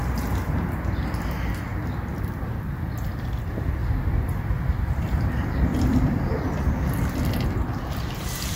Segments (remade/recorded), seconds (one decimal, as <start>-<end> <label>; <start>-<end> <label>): 0.0-1.1 recorded; 1.1-1.7 remade; 1.7-2.8 recorded; 2.8-8.6 remade